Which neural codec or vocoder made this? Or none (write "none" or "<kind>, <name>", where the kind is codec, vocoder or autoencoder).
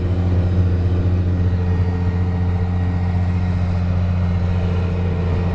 none